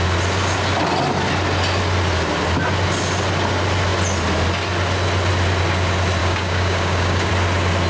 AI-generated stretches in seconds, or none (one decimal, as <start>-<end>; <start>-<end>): 6.2-7.3